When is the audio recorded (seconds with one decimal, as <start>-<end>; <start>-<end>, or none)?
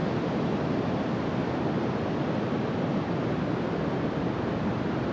0.0-5.1